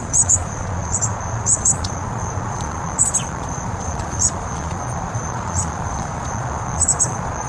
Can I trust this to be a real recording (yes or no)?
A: no